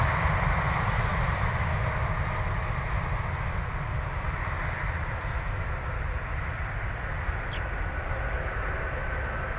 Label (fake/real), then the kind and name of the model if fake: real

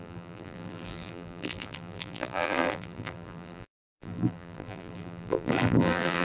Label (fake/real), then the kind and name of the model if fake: fake, vocoder, BigVGAN v2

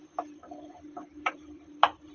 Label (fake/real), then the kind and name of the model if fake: fake, vocoder, BigVGAN v2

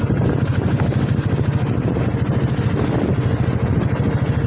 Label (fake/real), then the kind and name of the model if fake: real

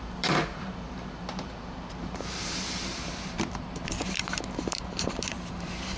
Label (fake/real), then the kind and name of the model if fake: fake, vocoder, BigVGAN v2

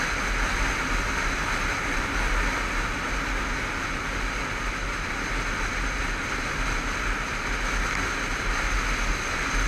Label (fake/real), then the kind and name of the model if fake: real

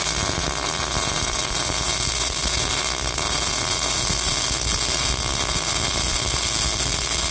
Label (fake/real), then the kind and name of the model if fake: real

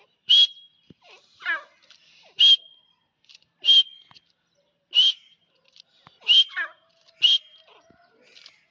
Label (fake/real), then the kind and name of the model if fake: real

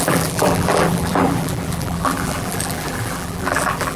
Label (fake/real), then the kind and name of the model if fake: fake, vocoder, BigVGAN v2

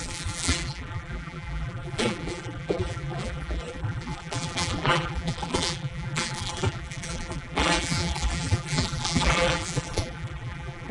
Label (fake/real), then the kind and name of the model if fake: fake, vocoder, BigVGAN v2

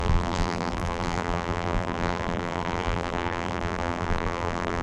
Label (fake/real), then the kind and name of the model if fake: fake, vocoder, BigVGAN v2